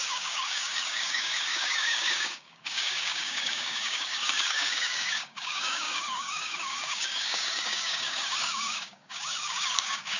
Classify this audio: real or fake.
fake